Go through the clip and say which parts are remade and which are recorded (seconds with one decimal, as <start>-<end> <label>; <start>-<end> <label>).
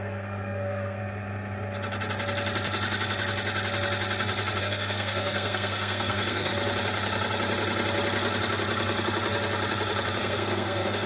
0.0-1.0 remade; 1.0-4.6 recorded; 4.6-6.5 remade; 6.5-10.2 recorded; 10.2-11.1 remade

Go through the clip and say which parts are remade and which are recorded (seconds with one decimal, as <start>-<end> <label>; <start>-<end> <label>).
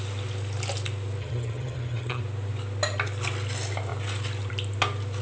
0.0-1.2 recorded; 1.2-2.2 remade; 2.2-5.2 recorded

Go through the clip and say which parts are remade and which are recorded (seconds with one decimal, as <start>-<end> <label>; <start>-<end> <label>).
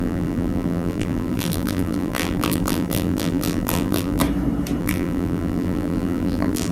0.0-4.2 remade; 4.2-4.8 recorded; 4.8-6.7 remade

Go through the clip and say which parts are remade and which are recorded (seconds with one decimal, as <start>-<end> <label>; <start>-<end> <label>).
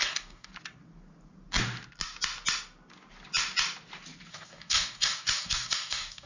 0.0-0.5 remade; 0.5-4.3 recorded; 4.3-6.3 remade